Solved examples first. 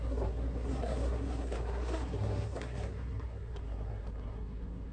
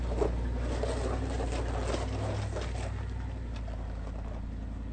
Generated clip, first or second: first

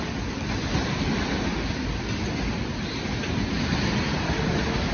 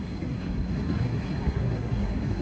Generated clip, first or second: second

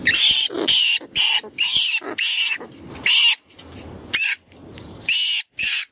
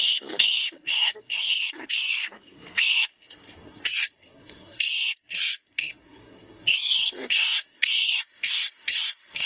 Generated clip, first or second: second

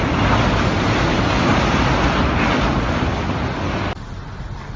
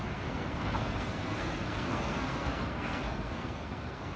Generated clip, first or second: second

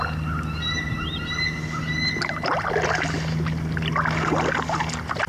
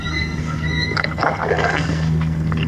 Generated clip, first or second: second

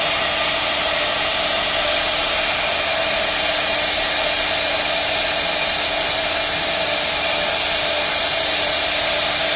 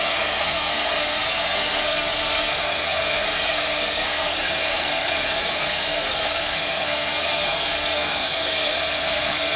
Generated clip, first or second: second